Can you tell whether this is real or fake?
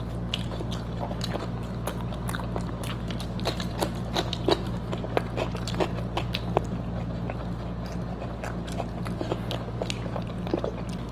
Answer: real